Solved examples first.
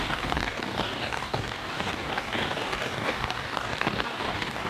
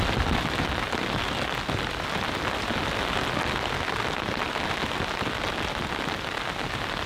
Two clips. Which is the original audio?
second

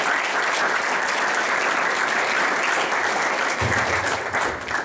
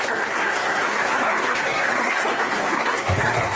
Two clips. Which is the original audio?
first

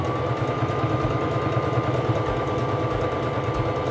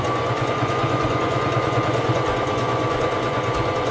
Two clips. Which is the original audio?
first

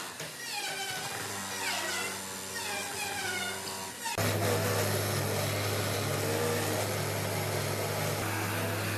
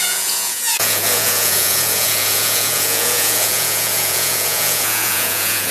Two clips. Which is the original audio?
first